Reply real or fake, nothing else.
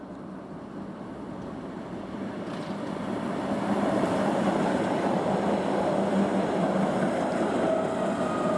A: real